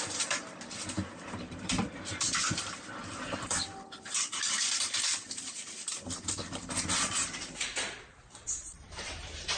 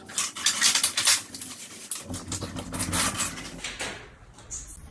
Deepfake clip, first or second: first